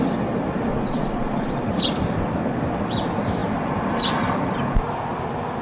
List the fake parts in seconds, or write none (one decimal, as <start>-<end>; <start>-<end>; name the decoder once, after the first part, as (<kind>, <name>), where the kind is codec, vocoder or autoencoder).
0.7-1.6 (vocoder, Vocos)